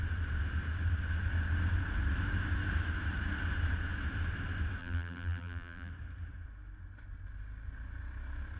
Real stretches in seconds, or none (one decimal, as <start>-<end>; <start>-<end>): 0.0-4.8; 5.9-8.6